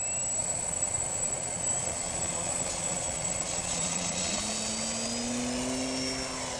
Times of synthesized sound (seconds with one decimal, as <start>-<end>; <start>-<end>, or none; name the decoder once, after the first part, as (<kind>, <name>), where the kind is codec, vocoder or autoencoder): 0.4-4.4 (vocoder, Vocos)